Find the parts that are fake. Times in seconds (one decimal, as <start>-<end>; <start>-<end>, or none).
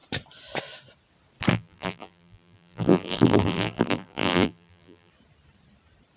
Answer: 1.5-5.1